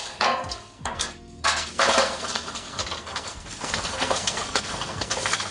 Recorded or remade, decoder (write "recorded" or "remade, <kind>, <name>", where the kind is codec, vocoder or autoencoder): remade, codec, SNAC